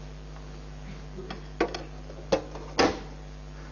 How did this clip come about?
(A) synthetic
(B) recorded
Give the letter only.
B